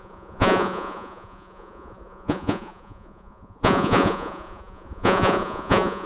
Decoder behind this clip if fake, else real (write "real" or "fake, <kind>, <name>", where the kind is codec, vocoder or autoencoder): fake, vocoder, Vocos